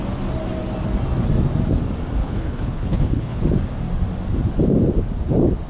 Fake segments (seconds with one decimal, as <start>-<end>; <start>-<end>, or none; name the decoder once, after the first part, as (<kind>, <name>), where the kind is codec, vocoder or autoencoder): 2.2-3.4 (codec, HILCodec)